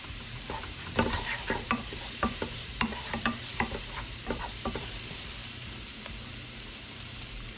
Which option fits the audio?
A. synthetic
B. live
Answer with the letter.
A